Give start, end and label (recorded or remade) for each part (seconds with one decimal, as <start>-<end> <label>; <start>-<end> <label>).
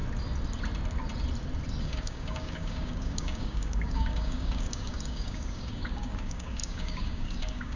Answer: 0.0-1.8 recorded; 1.8-7.8 remade